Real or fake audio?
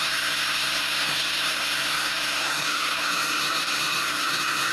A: fake